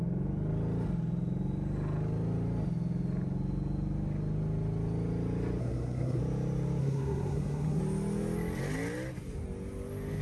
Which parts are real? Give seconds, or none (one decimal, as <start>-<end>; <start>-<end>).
0.0-5.6; 6.2-6.8; 7.8-10.2